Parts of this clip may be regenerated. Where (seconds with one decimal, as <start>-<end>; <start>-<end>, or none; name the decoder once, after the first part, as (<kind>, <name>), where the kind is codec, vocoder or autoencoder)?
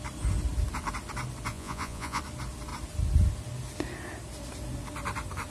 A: 1.5-2.2 (vocoder, Vocos)